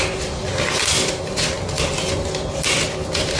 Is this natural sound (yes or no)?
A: yes